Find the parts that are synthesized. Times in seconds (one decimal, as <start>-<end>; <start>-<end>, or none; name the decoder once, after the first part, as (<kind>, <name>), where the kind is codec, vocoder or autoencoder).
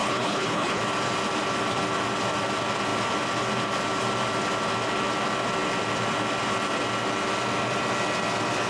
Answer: 0.0-0.8 (codec, HILCodec)